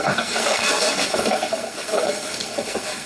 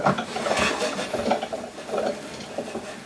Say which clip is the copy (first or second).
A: first